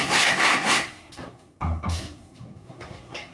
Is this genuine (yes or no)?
no